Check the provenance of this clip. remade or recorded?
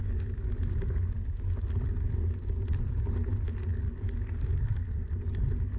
recorded